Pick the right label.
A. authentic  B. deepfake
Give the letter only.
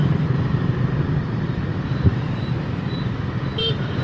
B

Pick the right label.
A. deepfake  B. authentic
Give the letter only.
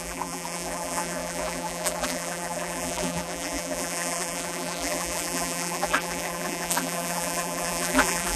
A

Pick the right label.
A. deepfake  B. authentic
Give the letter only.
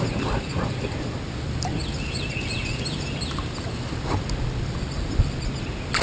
B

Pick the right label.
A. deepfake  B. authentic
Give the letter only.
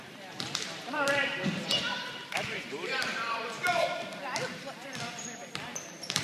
A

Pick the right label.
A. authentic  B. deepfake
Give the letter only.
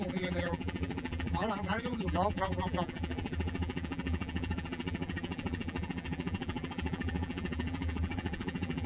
B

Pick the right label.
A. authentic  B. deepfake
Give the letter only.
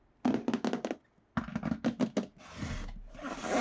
A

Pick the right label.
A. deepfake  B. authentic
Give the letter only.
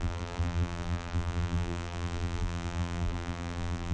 A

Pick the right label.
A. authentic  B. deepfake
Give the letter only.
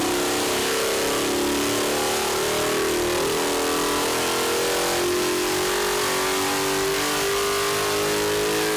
A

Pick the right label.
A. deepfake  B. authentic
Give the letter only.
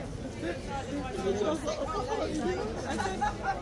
B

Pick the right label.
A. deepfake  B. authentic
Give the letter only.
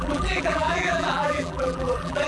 A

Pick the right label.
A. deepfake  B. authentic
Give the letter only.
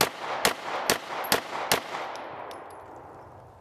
B